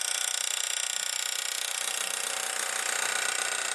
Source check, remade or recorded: recorded